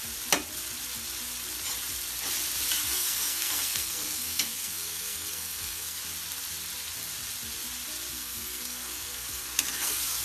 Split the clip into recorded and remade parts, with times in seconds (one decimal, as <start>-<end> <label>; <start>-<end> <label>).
0.0-2.8 recorded; 2.8-6.0 remade; 6.0-8.1 recorded; 8.1-10.2 remade